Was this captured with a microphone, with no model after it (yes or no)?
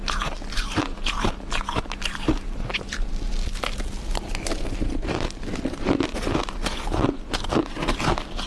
yes